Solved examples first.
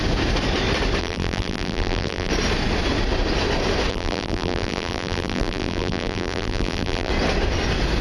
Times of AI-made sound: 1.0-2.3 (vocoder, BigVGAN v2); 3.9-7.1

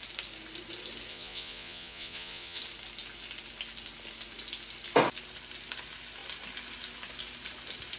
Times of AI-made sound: 1.1-2.6 (vocoder, Vocos)

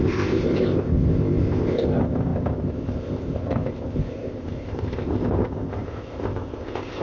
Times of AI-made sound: 0.0-7.0 (codec, ZipCodec)